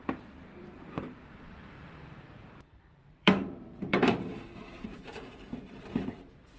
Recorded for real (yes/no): no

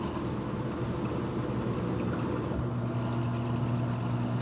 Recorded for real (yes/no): yes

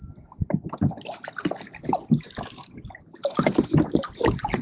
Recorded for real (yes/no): yes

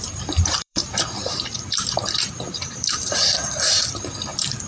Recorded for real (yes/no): no